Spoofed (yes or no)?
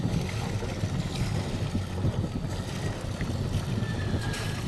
no